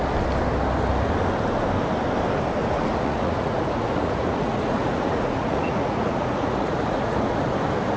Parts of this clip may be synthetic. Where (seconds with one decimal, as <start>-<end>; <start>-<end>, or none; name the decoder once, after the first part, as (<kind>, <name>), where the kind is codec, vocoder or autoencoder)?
2.6-7.4 (vocoder, Vocos)